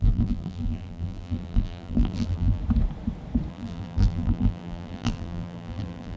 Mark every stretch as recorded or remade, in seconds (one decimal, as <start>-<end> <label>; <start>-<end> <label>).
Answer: 0.0-2.6 remade; 2.6-3.5 recorded; 3.5-6.2 remade